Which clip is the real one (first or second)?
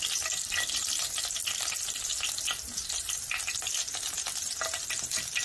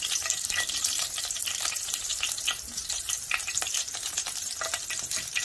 first